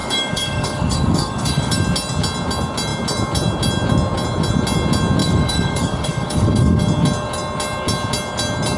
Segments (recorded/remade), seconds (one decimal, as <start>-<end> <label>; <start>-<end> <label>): 0.0-1.8 remade; 1.8-5.2 recorded; 5.2-6.8 remade; 6.8-8.8 recorded